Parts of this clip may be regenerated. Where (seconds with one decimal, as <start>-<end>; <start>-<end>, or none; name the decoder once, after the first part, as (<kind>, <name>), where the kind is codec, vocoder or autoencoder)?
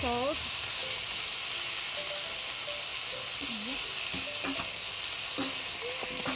none